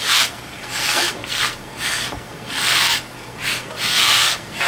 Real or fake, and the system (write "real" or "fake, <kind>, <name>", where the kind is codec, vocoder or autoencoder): fake, codec, SNAC